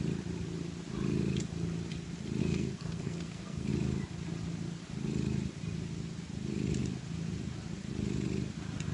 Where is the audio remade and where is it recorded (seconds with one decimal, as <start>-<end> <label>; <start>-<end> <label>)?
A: 0.0-2.4 recorded; 2.4-3.7 remade; 3.7-8.9 recorded